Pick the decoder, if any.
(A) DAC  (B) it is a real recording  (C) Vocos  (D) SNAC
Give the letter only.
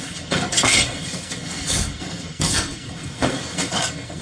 D